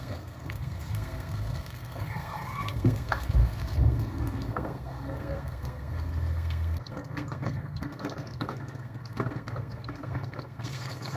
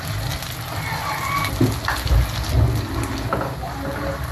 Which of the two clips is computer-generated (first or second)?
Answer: first